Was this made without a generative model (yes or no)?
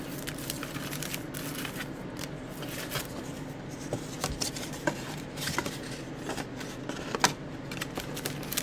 yes